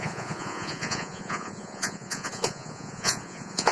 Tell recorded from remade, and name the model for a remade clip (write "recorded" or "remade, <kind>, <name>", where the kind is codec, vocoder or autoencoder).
remade, vocoder, Vocos